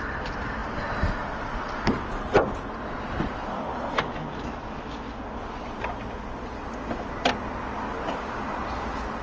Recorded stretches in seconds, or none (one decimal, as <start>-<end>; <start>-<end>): 0.0-9.2

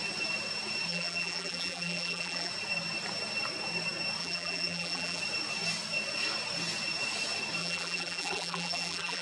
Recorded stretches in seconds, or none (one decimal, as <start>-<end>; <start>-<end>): 0.0-0.9; 2.5-4.2; 5.2-7.6

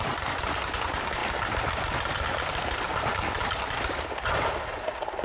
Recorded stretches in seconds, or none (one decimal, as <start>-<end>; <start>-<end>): 0.0-5.2

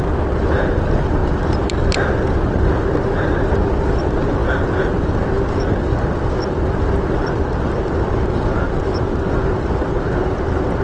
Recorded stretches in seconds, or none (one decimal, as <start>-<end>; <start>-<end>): 0.0-10.8